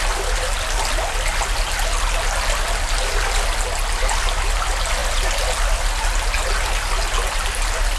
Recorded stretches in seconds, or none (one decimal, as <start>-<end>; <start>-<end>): 0.0-8.0